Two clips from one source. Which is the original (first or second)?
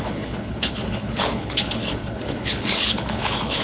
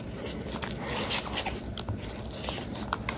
second